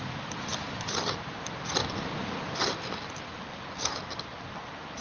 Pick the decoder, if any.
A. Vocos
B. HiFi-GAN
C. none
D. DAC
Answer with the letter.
C